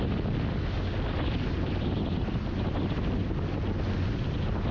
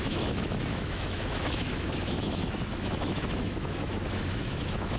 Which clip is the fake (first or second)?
second